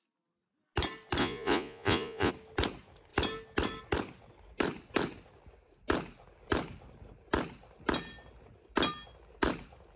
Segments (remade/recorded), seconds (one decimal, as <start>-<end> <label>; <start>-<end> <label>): 0.0-1.2 recorded; 1.2-2.3 remade; 2.3-10.0 recorded